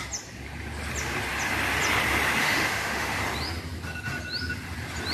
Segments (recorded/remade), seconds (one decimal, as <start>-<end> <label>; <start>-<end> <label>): 0.0-2.4 recorded; 2.4-3.2 remade; 3.2-5.1 recorded